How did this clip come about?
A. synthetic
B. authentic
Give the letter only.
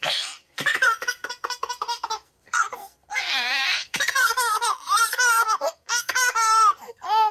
A